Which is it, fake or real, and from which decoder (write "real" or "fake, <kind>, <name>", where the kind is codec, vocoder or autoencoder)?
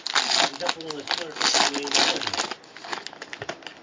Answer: real